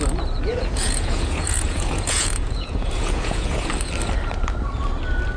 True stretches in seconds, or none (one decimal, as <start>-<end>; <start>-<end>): 0.0-0.5; 3.7-5.4